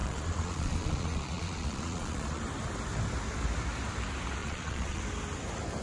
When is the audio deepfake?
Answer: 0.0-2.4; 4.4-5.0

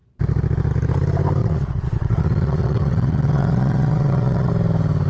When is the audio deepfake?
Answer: 1.4-4.5

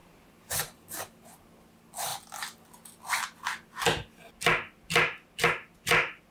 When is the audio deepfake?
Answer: 0.0-1.0